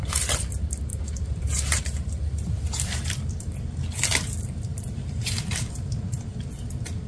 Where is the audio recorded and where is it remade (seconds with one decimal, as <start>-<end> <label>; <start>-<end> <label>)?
0.0-0.9 recorded; 0.9-1.8 remade; 1.8-4.7 recorded; 4.7-6.2 remade; 6.2-7.1 recorded